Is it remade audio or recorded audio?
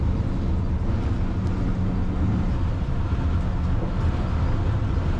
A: recorded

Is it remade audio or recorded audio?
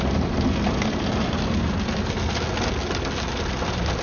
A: recorded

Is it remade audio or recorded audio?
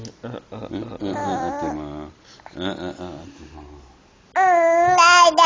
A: recorded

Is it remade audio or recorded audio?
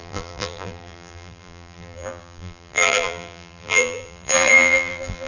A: remade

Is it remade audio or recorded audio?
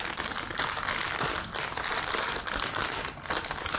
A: recorded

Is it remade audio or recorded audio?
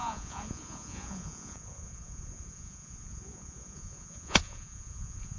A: remade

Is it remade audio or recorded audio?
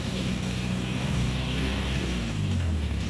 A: remade